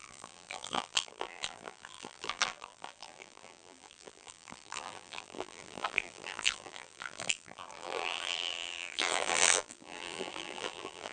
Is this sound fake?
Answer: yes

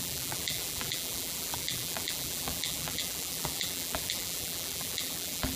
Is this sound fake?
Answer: yes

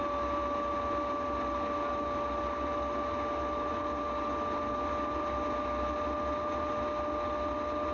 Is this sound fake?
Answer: no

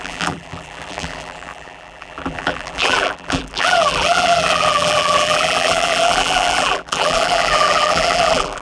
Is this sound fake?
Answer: yes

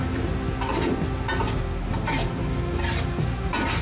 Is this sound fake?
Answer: no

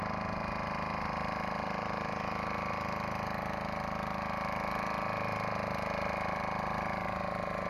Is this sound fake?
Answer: no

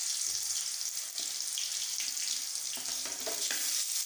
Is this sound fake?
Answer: no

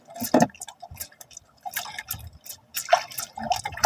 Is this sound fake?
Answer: no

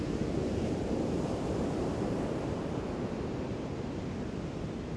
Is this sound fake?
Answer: yes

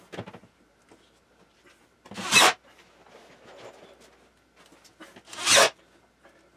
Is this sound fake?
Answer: no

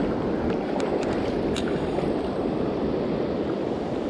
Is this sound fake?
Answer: yes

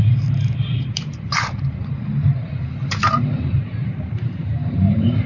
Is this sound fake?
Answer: yes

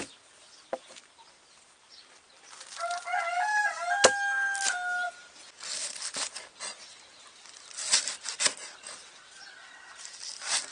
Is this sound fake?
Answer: no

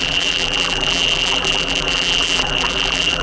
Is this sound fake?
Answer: yes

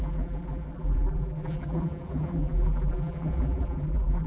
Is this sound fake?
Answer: yes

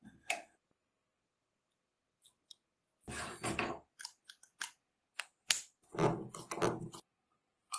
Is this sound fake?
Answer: no